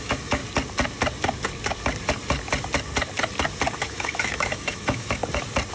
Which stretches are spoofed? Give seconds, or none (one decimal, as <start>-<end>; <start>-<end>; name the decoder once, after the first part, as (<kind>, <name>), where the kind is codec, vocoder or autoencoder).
0.0-0.4 (autoencoder, DAC-VAE); 3.8-5.2